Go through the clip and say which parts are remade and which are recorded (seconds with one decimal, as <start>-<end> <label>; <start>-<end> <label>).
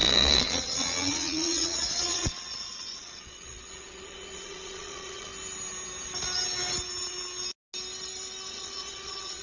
0.0-5.3 remade; 5.3-8.5 recorded; 8.5-9.4 remade